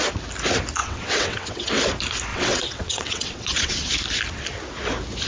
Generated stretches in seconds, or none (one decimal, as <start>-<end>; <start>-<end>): 0.8-1.7; 2.3-3.9